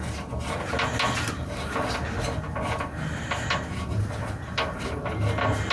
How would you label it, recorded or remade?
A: recorded